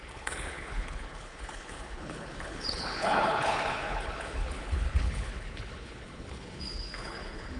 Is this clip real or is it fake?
fake